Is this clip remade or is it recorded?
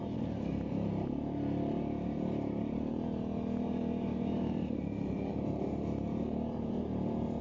recorded